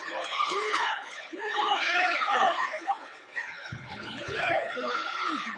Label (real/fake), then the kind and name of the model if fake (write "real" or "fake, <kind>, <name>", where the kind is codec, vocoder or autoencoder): fake, codec, HILCodec